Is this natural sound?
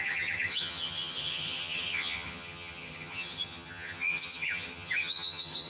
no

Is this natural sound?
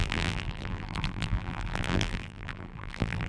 no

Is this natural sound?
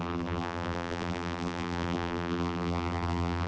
no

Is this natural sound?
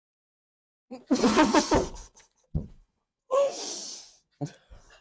no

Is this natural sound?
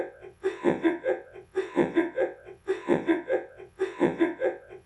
no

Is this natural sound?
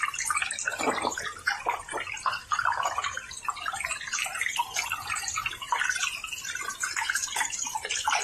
yes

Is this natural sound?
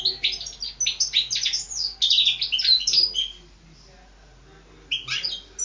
yes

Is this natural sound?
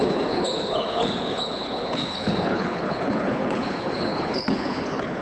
no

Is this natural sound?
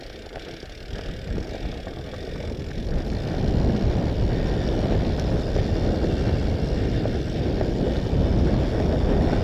yes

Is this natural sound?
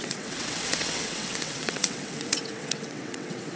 no